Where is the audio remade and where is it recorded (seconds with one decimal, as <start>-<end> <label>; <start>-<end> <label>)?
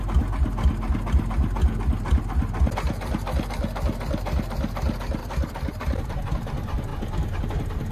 0.0-5.2 recorded; 5.2-6.2 remade; 6.2-7.9 recorded